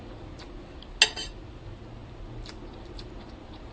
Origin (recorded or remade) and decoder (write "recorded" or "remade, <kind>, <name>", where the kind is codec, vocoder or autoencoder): recorded